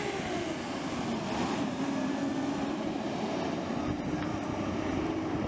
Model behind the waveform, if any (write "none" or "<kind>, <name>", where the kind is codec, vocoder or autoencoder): none